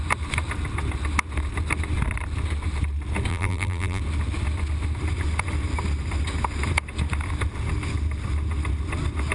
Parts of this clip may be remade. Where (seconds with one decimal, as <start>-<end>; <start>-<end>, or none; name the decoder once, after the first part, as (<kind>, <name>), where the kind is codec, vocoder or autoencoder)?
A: 3.3-4.0 (vocoder, BigVGAN v2)